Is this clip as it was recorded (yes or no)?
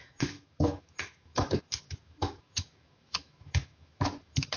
no